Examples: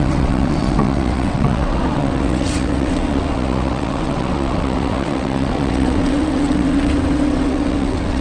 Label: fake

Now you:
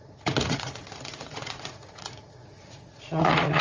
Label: fake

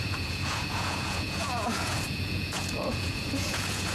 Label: fake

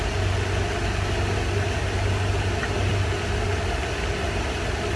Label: real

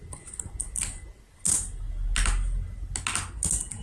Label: real